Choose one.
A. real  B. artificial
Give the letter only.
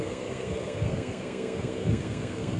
B